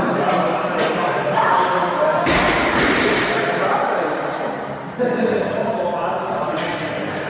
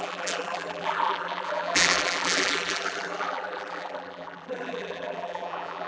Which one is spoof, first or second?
second